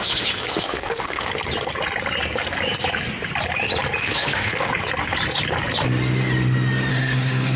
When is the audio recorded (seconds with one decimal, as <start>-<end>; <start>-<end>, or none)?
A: 1.3-4.0; 4.7-6.9